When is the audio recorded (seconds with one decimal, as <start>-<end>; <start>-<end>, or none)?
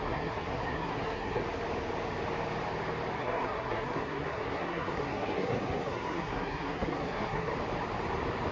1.4-3.2; 7.5-8.5